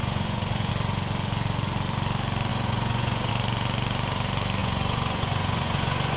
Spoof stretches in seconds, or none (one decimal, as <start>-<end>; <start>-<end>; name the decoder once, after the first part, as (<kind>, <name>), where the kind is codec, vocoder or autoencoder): 0.0-0.7 (vocoder, Vocos); 2.5-3.3; 4.6-6.2